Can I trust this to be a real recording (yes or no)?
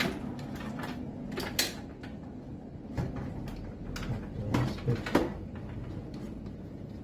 yes